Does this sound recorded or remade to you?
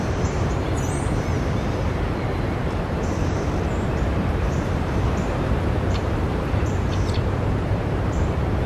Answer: remade